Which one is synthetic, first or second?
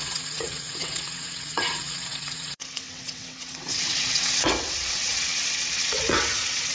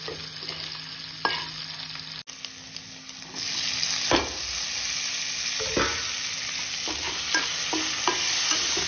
first